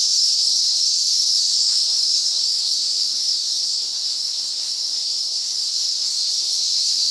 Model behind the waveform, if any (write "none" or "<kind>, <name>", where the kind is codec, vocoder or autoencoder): codec, SNAC